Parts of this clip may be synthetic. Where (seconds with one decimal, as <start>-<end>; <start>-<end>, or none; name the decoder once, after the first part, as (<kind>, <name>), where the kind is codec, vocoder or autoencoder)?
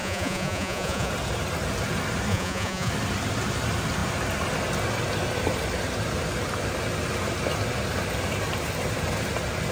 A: 0.0-1.1 (vocoder, Vocos); 2.3-2.9